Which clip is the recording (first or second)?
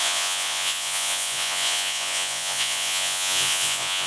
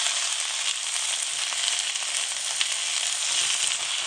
second